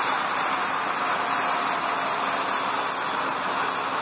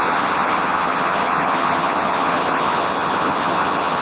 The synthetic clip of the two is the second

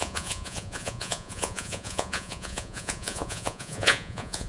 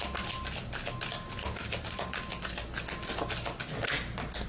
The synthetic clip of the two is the first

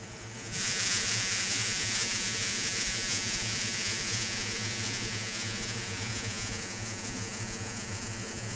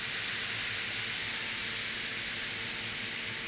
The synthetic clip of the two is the first